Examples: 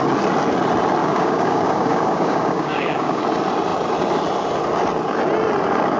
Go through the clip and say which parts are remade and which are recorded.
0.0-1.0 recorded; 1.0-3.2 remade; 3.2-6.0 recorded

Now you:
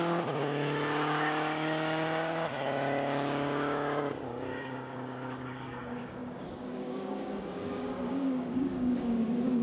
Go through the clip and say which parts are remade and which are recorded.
0.0-9.6 remade

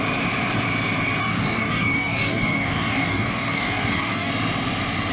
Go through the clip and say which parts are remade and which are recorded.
0.0-1.2 recorded; 1.2-4.3 remade; 4.3-5.1 recorded

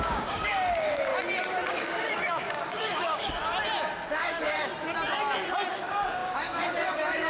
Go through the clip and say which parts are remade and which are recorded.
0.0-1.1 remade; 1.1-1.7 recorded; 1.7-3.4 remade; 3.4-4.1 recorded; 4.1-4.7 remade; 4.7-5.7 recorded; 5.7-7.3 remade